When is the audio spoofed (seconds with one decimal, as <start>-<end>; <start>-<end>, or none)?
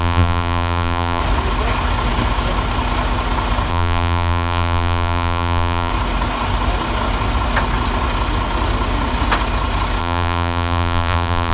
0.0-1.2; 3.7-5.9; 10.0-11.5